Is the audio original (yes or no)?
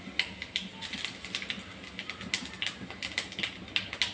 yes